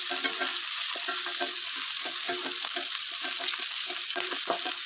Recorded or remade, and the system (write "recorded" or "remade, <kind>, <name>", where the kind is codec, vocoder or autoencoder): recorded